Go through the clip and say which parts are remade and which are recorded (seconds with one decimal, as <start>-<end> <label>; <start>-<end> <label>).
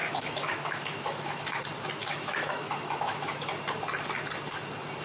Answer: 0.0-1.6 remade; 1.6-2.0 recorded; 2.0-3.5 remade; 3.5-5.0 recorded